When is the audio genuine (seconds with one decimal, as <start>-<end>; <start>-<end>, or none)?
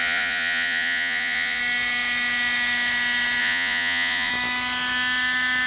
1.6-3.4; 4.3-5.7